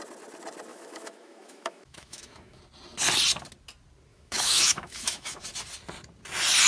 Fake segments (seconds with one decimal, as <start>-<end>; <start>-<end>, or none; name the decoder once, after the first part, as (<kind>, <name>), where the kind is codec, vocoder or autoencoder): 0.7-2.6 (autoencoder, DAC-VAE); 4.1-5.4